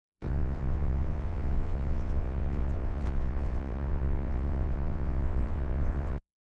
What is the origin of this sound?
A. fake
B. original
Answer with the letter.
A